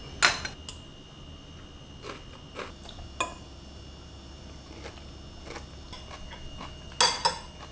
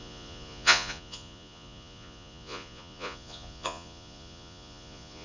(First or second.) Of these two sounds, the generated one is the second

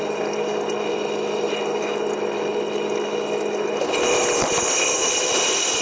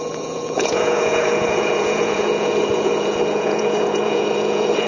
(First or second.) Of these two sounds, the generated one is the second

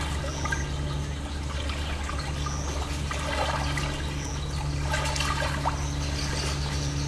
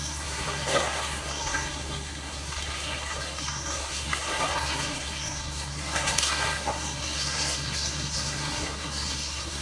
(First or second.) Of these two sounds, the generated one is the second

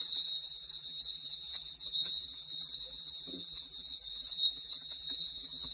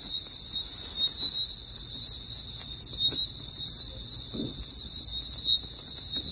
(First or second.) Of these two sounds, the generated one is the first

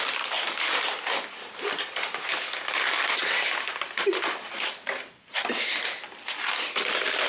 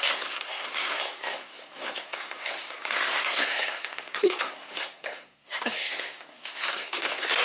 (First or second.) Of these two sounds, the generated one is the second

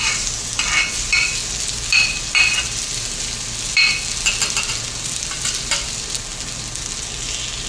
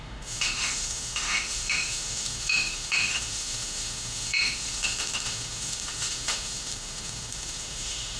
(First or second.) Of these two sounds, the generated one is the second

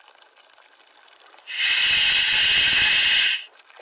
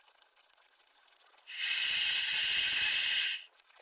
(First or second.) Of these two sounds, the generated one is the second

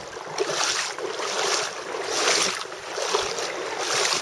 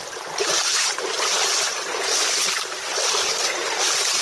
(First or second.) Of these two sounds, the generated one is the second